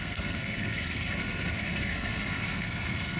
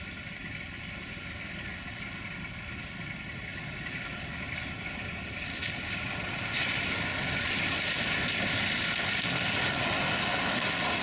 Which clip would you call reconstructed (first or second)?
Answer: first